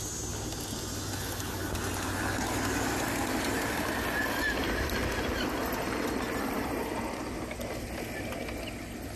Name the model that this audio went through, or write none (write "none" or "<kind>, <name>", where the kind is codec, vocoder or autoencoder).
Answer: none